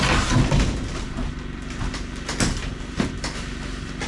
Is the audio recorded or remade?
recorded